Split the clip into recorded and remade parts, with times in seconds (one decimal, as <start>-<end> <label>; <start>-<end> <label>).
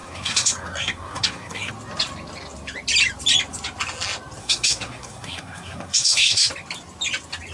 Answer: 0.0-1.7 remade; 1.7-4.4 recorded; 4.4-6.5 remade; 6.5-7.5 recorded